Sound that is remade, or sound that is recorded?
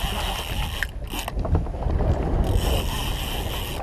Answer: recorded